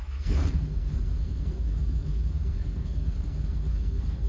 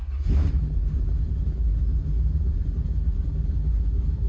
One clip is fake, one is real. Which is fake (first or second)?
first